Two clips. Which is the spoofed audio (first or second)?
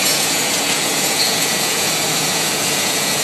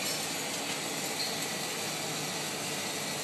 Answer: first